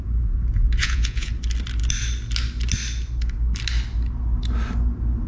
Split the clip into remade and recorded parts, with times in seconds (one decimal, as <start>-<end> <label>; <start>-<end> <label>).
0.0-0.8 recorded; 0.8-1.3 remade; 1.3-5.3 recorded